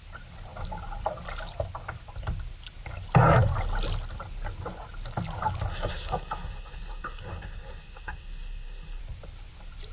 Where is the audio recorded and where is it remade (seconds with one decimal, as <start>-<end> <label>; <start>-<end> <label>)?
0.0-5.7 recorded; 5.7-9.0 remade; 9.0-9.9 recorded